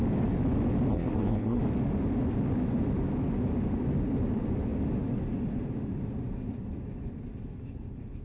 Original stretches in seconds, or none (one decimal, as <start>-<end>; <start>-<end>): 0.0-0.9; 1.6-8.2

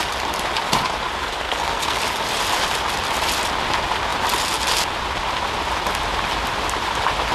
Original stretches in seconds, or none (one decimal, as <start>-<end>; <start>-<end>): 0.0-1.2; 2.0-7.3

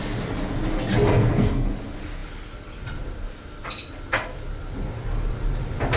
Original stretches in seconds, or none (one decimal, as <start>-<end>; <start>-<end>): 0.0-1.1; 1.7-6.0

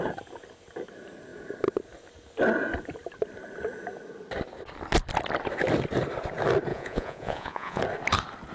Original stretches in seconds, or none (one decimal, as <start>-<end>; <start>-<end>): 0.0-6.7; 7.8-8.5

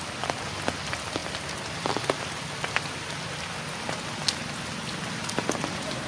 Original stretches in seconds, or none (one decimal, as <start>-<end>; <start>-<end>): 0.0-6.1

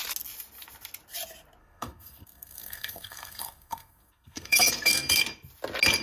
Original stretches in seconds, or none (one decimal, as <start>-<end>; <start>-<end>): 0.0-1.6; 5.2-6.0